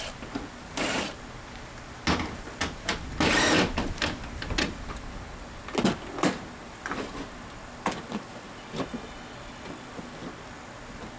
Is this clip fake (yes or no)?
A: no